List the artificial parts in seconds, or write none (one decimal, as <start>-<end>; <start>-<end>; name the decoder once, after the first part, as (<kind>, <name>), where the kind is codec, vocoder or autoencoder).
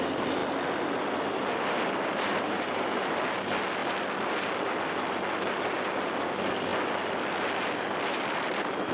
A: none